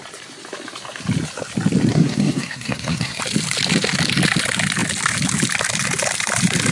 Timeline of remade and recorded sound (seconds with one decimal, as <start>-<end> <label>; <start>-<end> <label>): 0.0-1.9 recorded; 1.9-3.2 remade; 3.2-6.7 recorded